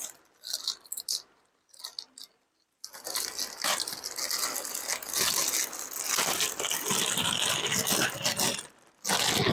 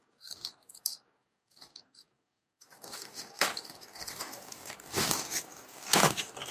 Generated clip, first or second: second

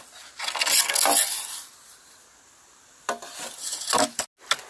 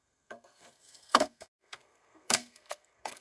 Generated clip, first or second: second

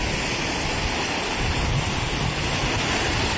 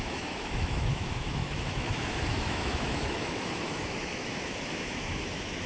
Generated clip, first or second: second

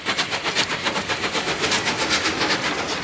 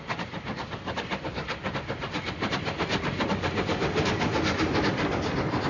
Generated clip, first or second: second